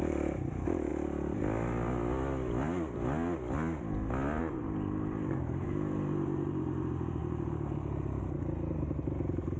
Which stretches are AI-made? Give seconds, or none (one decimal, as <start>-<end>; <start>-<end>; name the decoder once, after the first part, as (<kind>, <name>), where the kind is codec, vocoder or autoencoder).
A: 0.0-0.9 (vocoder, BigVGAN v2); 4.4-9.6